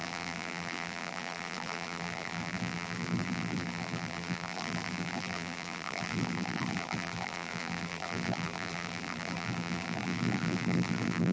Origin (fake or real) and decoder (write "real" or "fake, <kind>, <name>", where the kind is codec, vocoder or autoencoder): fake, vocoder, BigVGAN v2